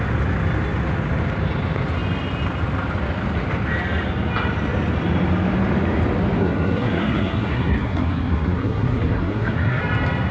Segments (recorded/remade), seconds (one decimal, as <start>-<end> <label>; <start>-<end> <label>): 0.0-6.4 recorded; 6.4-9.8 remade; 9.8-10.3 recorded